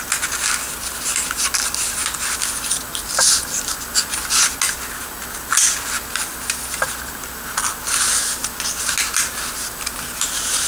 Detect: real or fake real